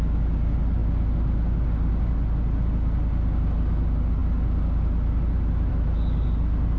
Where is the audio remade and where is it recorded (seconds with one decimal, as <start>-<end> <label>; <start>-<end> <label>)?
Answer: 0.0-6.8 recorded